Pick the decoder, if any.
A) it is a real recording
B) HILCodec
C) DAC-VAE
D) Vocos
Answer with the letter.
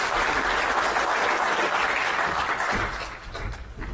A